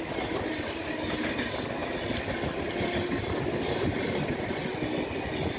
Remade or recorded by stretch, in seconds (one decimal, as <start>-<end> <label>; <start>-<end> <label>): 0.0-5.6 recorded